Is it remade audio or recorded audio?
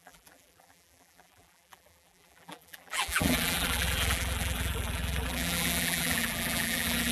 remade